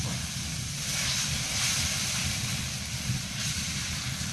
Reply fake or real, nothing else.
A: fake